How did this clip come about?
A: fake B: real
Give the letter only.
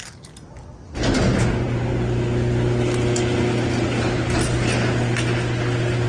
B